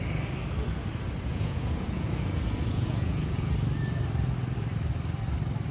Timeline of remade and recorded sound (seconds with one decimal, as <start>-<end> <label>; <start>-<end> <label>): 0.0-1.3 recorded; 1.3-3.5 remade; 3.5-5.7 recorded